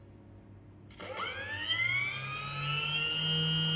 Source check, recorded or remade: recorded